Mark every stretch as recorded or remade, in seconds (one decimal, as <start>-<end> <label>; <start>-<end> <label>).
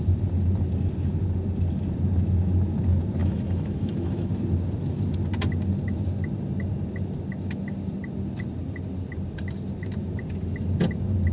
0.0-3.2 recorded; 3.2-4.3 remade; 4.3-11.3 recorded